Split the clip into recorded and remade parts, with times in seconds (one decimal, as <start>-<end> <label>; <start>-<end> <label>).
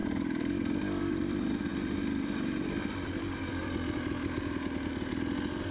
0.0-5.7 recorded